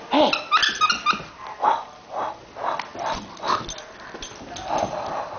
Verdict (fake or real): real